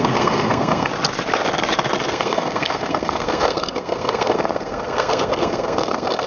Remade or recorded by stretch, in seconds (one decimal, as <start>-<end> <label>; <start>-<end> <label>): 0.0-0.9 remade; 0.9-2.1 recorded; 2.1-6.3 remade